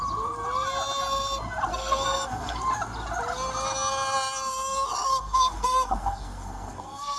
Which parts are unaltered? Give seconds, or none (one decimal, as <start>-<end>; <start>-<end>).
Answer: 0.0-1.7; 2.6-5.1